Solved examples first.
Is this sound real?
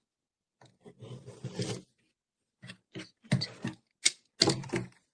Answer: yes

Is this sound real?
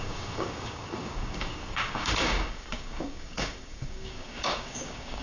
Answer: no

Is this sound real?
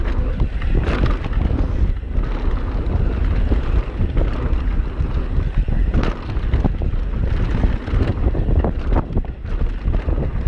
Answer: yes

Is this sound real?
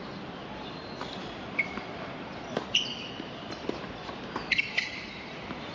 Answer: no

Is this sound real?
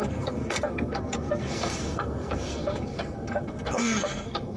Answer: no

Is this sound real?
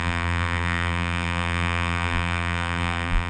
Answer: no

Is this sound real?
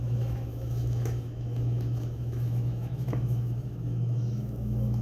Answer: no